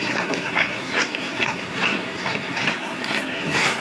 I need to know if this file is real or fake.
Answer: fake